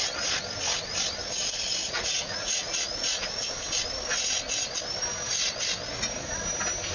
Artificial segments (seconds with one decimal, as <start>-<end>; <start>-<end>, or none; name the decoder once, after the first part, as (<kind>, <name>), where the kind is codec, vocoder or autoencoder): 1.8-3.6 (vocoder, Vocos)